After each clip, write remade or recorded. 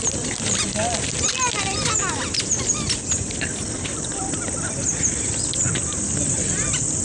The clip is recorded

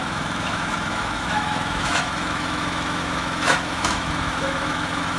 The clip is remade